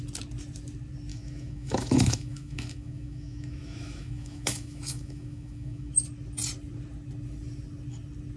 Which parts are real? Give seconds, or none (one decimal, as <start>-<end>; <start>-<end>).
0.0-1.1; 5.9-8.4